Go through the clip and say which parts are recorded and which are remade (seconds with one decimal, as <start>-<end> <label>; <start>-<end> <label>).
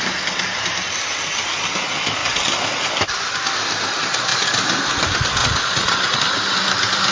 0.0-5.4 recorded; 5.4-6.2 remade; 6.2-7.1 recorded